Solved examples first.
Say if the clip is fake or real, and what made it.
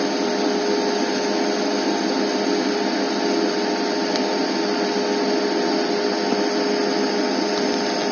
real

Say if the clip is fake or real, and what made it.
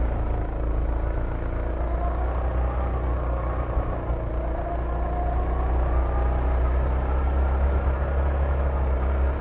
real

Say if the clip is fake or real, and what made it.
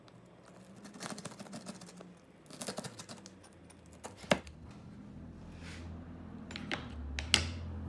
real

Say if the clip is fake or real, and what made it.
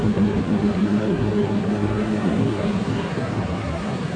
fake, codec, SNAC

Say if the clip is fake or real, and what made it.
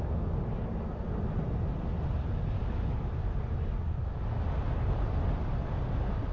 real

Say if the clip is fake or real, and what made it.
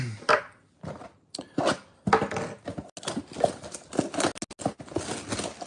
real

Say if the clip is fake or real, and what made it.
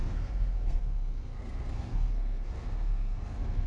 fake, codec, SNAC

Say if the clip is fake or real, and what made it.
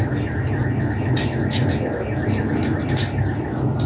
real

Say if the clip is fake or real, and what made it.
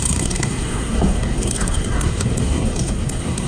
fake, codec, SNAC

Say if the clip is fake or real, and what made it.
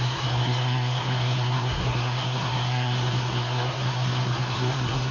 fake, codec, SNAC